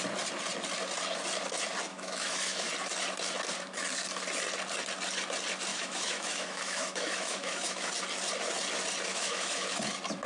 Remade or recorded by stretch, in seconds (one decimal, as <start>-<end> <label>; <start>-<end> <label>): 0.0-1.9 recorded; 1.9-2.7 remade; 2.7-5.7 recorded; 5.7-7.9 remade; 7.9-9.1 recorded; 9.1-9.8 remade; 9.8-10.3 recorded